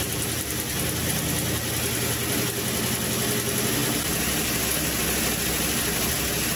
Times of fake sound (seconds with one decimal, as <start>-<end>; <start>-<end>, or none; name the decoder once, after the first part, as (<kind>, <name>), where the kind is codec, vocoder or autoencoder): none